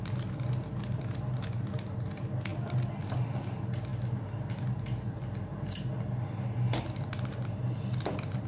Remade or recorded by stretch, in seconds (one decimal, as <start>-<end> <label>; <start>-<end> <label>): 0.0-8.5 recorded